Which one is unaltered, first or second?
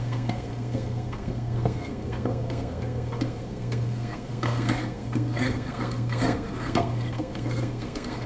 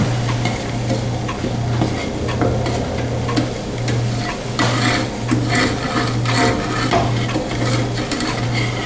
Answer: second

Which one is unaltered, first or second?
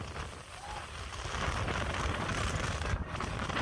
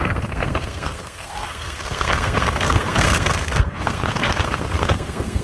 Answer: first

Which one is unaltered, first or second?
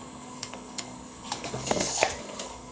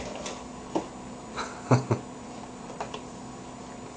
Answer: second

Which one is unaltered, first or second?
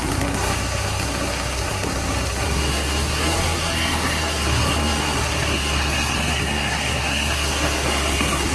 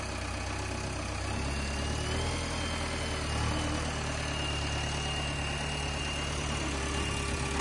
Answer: second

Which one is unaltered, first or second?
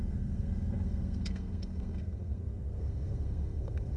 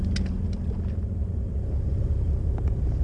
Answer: second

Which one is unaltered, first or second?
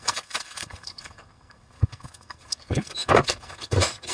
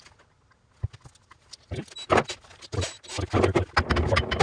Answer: second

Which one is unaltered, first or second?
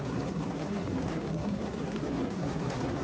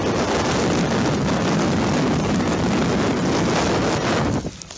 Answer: second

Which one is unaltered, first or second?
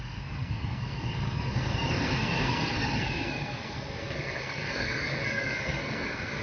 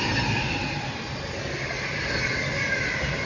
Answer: second